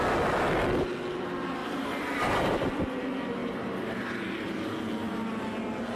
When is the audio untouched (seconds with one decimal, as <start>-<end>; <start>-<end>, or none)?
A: 0.0-1.6; 2.6-3.4; 4.7-6.0